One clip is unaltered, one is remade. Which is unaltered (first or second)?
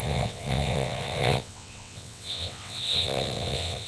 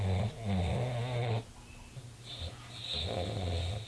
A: second